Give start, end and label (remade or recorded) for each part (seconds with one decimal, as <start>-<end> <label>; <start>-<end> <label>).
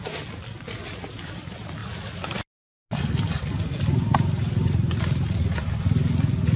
0.0-6.6 recorded